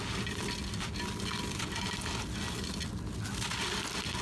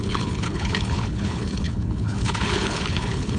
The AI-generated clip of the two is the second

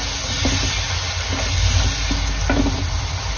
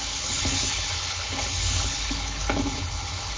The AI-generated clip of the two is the second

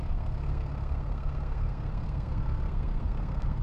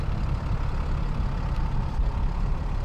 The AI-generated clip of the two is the first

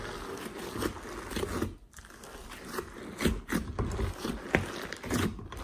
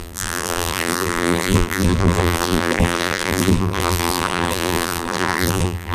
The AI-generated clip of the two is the second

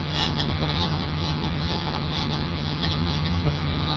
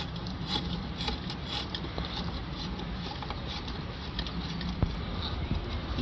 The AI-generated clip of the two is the first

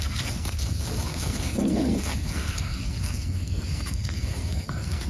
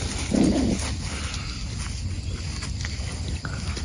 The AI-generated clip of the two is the first